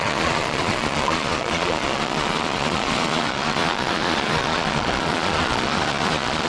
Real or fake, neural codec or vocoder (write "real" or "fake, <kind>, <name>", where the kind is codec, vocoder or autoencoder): fake, vocoder, Vocos